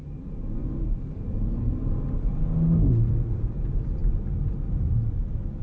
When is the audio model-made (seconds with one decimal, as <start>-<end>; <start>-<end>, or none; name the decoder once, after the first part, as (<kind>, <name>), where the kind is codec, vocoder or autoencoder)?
none